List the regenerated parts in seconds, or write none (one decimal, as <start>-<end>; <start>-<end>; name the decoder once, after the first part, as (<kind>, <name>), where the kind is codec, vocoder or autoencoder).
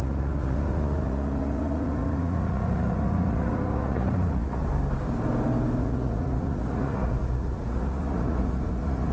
0.0-4.6 (vocoder, Vocos); 5.8-9.1